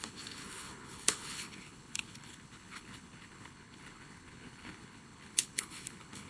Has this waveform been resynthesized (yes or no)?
yes